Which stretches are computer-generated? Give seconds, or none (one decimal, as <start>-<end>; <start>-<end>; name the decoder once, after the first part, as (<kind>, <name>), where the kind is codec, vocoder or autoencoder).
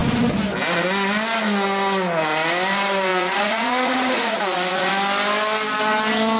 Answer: 3.1-4.9 (vocoder, Vocos)